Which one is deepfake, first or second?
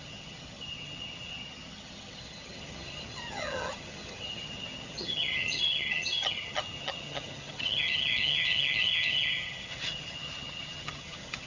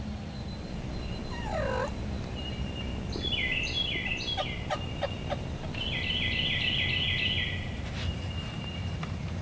first